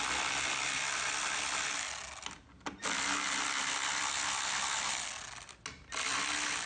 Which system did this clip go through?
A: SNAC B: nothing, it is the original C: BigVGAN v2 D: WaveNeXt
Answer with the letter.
B